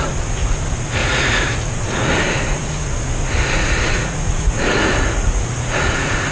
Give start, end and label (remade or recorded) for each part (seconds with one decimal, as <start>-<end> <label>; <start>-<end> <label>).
0.0-1.0 recorded; 1.0-2.0 remade; 2.0-3.6 recorded; 3.6-6.3 remade